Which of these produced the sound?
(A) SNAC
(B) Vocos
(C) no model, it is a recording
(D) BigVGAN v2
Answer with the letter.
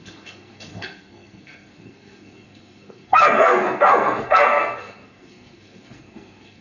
A